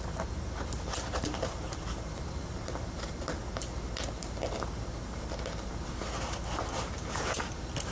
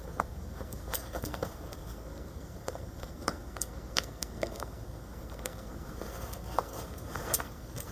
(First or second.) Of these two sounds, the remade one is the second